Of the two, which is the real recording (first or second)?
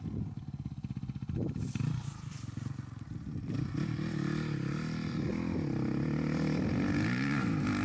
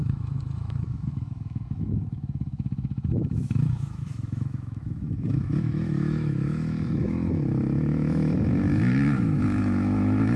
first